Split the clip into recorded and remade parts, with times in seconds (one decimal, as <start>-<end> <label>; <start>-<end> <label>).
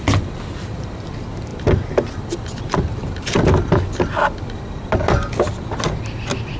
0.0-6.6 recorded